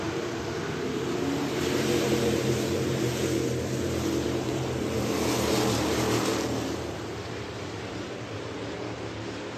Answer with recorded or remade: remade